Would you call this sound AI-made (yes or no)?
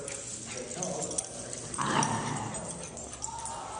no